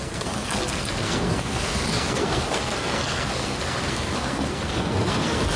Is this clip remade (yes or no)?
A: yes